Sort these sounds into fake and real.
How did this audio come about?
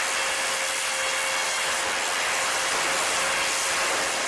real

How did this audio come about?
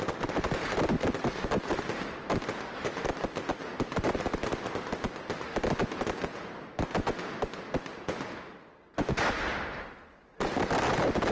real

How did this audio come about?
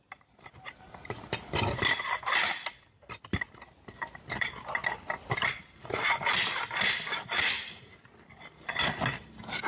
real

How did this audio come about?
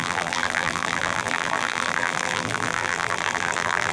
fake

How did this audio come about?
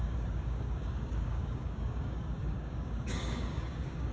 fake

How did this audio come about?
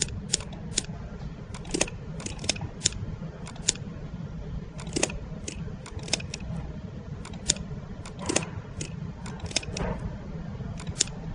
real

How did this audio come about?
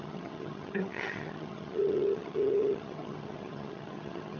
fake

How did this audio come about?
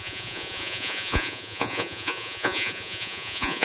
fake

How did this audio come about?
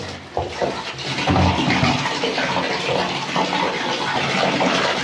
real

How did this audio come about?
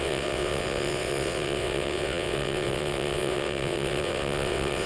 fake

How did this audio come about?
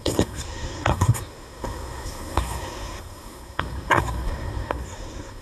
fake